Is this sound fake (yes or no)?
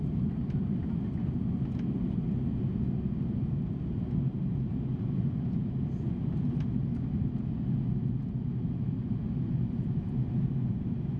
no